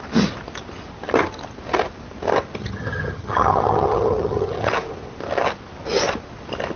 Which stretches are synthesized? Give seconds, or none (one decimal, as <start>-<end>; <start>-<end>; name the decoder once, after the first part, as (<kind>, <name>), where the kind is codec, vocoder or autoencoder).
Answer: 2.6-4.7 (vocoder, HiFi-GAN)